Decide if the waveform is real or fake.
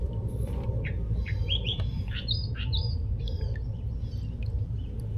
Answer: fake